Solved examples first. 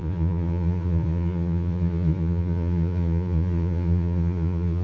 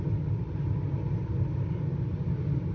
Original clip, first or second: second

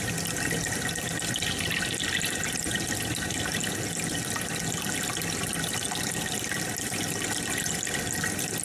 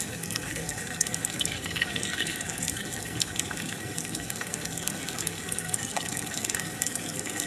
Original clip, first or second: first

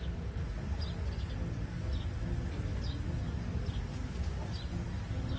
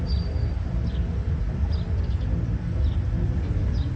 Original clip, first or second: first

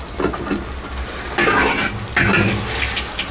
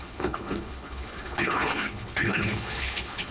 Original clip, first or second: first